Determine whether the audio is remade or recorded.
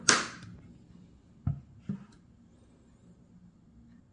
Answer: recorded